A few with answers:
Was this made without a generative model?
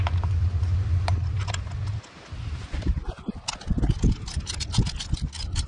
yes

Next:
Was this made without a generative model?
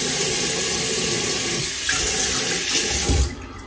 yes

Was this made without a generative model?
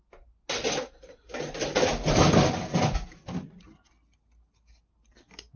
yes